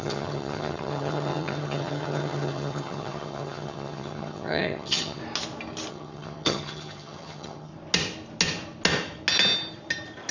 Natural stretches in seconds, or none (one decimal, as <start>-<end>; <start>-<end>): 5.2-5.9; 7.7-10.3